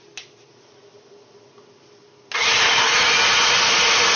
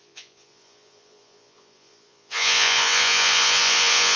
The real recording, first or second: first